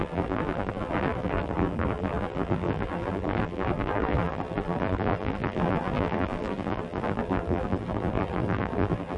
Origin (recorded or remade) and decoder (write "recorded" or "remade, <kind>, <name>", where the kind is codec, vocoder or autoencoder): remade, vocoder, BigVGAN v2